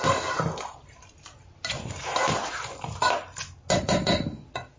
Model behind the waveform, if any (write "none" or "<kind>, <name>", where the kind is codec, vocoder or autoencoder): none